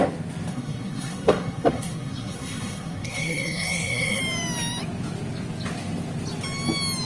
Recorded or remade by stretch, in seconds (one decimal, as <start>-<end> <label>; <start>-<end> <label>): 0.0-0.5 recorded; 0.5-4.2 remade; 4.2-7.0 recorded